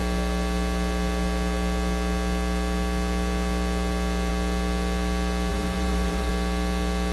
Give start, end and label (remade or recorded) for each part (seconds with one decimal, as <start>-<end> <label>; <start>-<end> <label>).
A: 0.0-5.5 recorded; 5.5-6.3 remade; 6.3-7.1 recorded